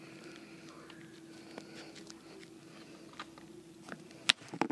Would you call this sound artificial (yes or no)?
no